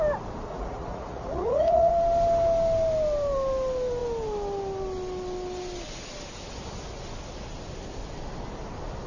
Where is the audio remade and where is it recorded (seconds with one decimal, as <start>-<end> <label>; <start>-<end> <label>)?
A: 0.0-0.5 recorded; 0.5-1.9 remade; 1.9-9.1 recorded